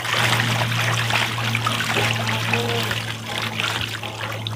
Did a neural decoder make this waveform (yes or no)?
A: no